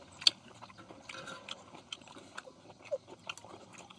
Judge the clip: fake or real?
real